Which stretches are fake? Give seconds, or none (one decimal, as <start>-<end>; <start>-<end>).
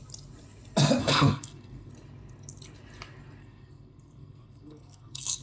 1.0-1.9; 3.4-5.4